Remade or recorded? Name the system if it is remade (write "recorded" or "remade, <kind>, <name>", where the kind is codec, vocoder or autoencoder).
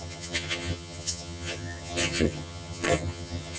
remade, vocoder, HiFi-GAN